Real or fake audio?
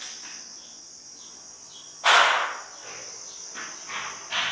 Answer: real